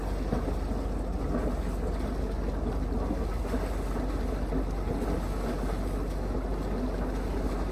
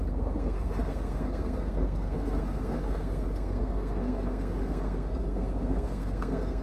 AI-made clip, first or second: second